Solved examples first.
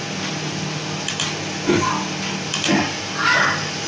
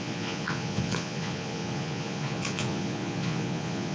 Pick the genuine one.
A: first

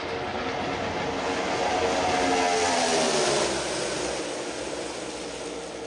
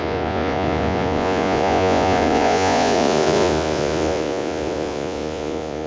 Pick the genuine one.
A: first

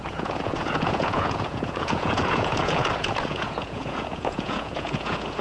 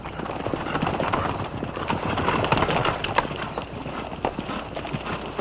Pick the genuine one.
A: second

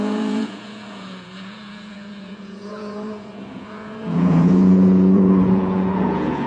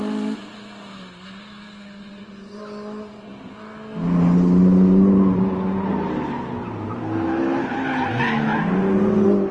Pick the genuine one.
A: second